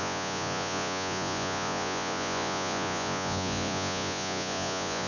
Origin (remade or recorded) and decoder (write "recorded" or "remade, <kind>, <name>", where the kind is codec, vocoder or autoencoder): remade, vocoder, Vocos